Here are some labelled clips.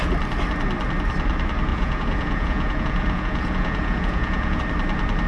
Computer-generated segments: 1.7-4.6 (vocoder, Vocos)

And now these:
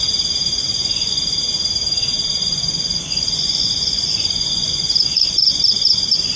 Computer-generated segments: 0.5-1.2 (vocoder, Vocos); 2.4-6.4

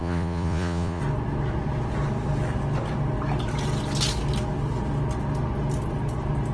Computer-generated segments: 0.0-1.0 (vocoder, Vocos)

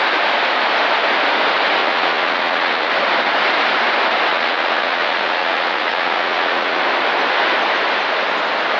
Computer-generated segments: 1.8-2.9 (vocoder, Vocos); 4.3-6.8